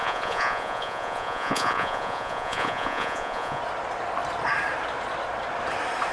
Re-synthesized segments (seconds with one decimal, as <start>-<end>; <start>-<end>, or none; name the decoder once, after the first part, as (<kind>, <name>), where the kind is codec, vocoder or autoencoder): 0.0-3.6 (vocoder, Vocos)